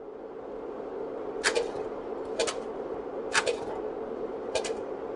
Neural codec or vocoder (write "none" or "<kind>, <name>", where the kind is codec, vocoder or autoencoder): none